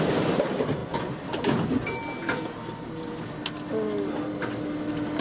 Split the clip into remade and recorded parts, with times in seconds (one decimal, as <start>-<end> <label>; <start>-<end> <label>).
0.0-5.2 recorded